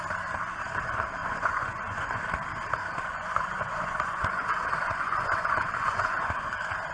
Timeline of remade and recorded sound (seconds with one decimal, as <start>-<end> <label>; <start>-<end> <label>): 0.0-1.2 recorded; 1.2-2.2 remade; 2.2-3.1 recorded; 3.1-6.5 remade; 6.5-6.9 recorded